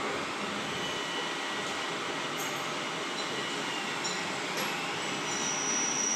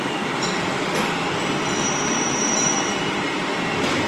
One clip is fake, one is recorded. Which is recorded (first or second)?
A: first